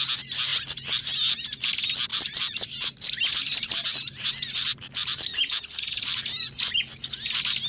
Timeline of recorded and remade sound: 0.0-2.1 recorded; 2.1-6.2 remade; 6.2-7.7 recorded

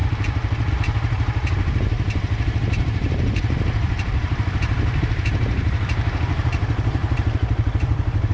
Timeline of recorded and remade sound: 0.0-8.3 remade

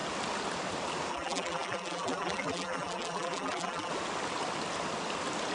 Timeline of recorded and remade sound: 0.0-1.1 recorded; 1.1-3.9 remade; 3.9-5.5 recorded